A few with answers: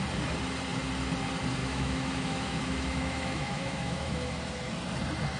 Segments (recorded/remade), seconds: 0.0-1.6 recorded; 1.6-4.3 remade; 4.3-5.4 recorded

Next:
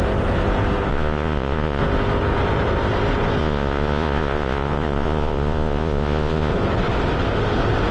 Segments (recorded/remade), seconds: 0.0-0.9 recorded; 0.9-1.8 remade; 1.8-3.4 recorded; 3.4-6.5 remade; 6.5-7.9 recorded

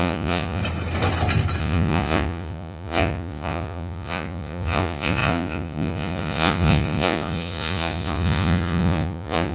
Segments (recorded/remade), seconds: 0.0-0.6 remade; 0.6-1.6 recorded; 1.6-9.5 remade

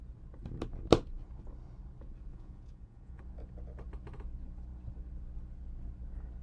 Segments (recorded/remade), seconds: 0.0-2.3 recorded; 2.3-3.2 remade; 3.2-6.4 recorded

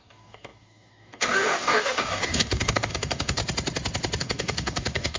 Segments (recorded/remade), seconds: 0.0-3.4 remade; 3.4-4.2 recorded; 4.2-5.2 remade

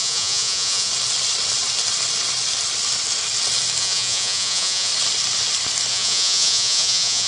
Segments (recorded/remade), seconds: 0.0-0.9 remade; 0.9-3.8 recorded; 3.8-4.9 remade; 4.9-5.9 recorded; 5.9-7.3 remade